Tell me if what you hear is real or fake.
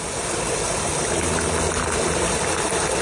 real